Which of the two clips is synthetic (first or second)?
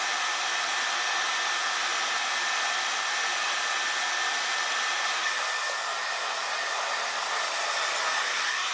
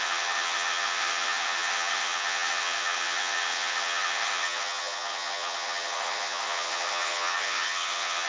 second